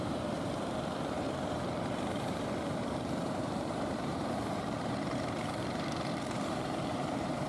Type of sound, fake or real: fake